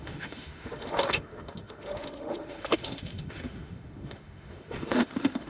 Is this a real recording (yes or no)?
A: no